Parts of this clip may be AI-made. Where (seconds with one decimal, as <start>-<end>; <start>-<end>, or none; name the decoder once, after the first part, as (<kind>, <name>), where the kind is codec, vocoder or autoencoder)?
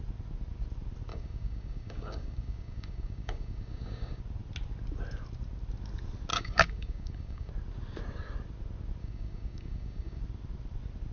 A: 1.1-4.2 (codec, DAC); 6.3-7.5; 9.0-10.2